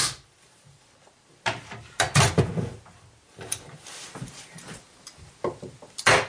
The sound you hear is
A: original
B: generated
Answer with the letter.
A